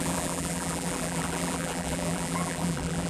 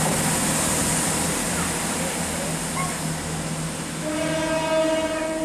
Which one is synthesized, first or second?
first